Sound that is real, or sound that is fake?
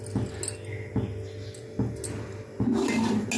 real